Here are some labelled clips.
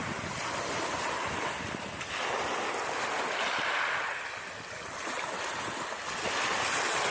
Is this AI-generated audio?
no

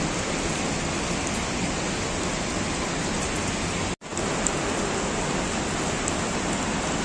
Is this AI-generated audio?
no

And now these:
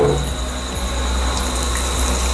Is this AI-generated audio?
no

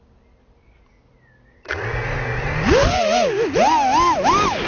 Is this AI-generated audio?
no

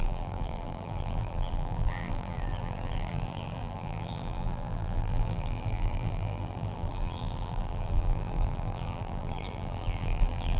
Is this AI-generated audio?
yes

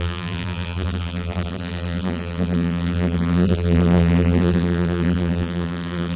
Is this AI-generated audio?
yes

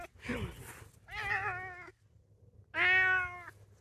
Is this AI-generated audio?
no